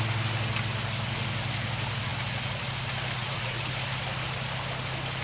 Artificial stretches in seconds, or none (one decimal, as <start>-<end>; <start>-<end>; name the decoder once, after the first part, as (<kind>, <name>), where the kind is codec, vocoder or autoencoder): 3.2-3.7 (vocoder, Vocos)